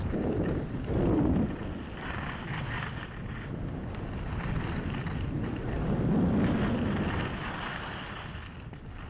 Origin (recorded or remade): recorded